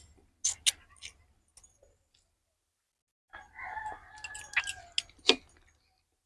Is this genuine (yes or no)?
yes